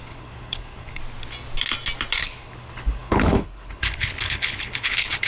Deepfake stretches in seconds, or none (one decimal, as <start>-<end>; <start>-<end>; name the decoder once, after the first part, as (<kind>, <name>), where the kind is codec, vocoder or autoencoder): 0.0-1.0 (codec, HILCodec); 2.2-5.3